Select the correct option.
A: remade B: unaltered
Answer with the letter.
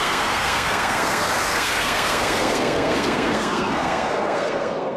A